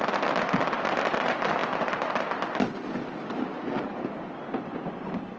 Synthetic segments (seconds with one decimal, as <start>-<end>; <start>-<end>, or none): none